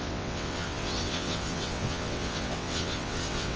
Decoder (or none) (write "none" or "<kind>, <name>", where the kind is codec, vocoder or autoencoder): vocoder, WaveNeXt